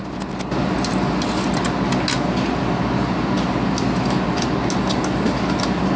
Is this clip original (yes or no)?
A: yes